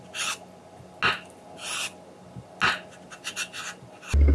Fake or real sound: real